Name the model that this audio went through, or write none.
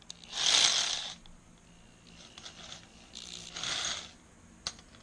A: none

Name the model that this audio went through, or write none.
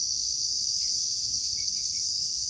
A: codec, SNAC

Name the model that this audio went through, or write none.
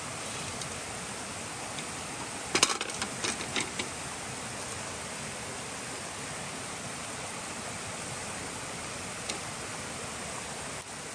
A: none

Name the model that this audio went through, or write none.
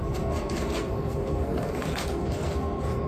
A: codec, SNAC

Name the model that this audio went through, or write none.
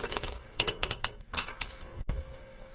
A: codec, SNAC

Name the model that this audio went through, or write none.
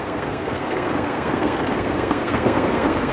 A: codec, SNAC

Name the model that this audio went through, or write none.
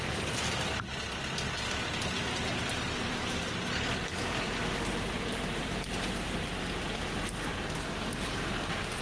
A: none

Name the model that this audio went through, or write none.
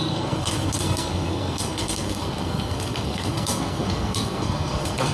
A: codec, SNAC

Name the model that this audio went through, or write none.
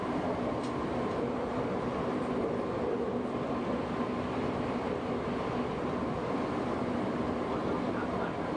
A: none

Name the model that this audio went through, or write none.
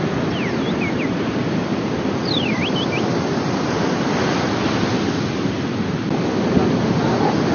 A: none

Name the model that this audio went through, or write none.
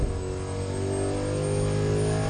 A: none